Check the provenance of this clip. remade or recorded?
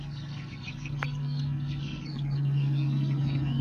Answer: remade